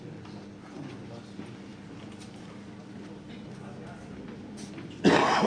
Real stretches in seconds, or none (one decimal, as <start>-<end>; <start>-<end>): 0.0-5.5